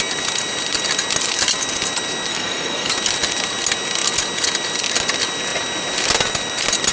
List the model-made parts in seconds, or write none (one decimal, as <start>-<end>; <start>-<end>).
2.3-2.9